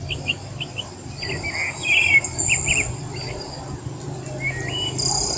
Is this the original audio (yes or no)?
yes